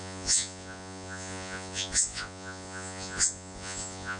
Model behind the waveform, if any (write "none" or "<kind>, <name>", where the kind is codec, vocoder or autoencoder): vocoder, Vocos